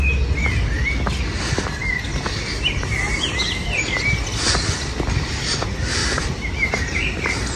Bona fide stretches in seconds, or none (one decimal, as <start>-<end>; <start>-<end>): 0.0-6.0